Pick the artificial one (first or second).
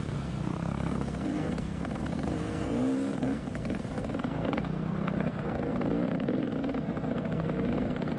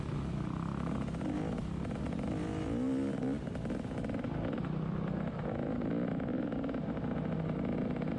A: first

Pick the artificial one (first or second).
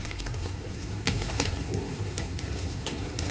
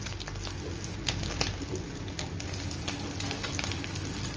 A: first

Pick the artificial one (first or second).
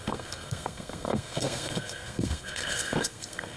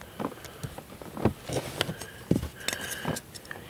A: first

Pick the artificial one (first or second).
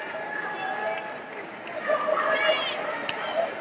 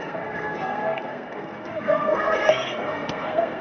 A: second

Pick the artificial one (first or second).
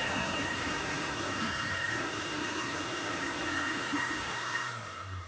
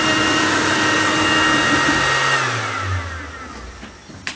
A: first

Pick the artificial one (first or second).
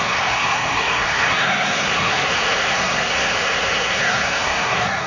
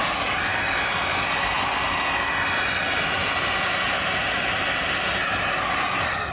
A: first